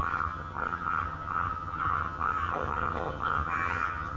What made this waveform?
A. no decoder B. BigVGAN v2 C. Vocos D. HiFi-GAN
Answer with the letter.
D